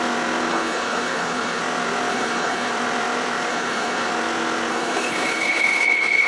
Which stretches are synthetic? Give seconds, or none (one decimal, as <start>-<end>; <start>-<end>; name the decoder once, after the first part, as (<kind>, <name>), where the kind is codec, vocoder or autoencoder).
0.5-1.6 (codec, HILCodec); 2.1-2.7; 3.5-4.1; 4.7-6.3